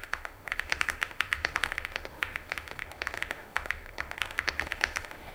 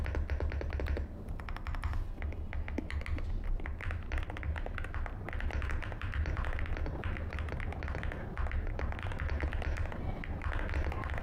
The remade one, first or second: first